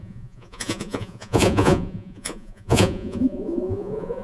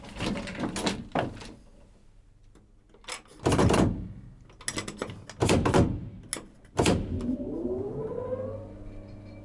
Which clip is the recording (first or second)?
second